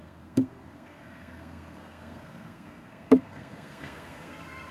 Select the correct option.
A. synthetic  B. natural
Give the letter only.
A